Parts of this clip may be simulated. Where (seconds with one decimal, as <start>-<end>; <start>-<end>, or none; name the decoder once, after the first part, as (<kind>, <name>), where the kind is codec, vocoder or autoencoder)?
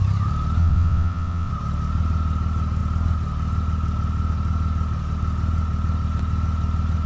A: 0.6-1.5 (vocoder, WaveNeXt)